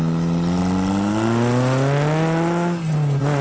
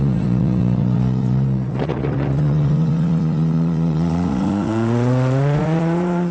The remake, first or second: second